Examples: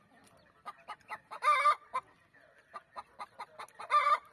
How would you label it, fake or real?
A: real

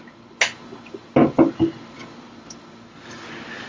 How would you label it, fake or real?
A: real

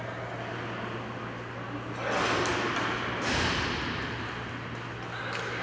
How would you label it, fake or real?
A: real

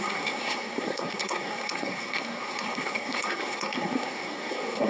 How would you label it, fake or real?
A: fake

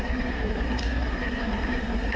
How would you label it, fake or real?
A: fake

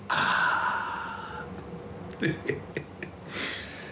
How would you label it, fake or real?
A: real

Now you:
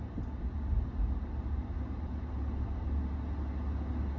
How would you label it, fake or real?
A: real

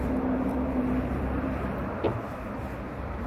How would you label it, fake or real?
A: fake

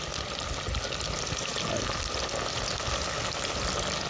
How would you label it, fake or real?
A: real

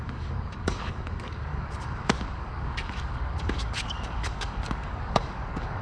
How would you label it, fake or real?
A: fake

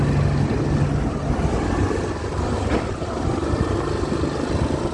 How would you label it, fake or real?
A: real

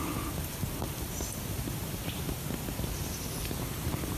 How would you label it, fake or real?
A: real